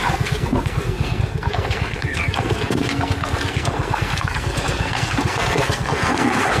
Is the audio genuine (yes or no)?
no